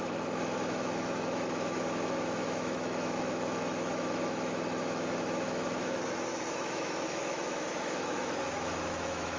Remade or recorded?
remade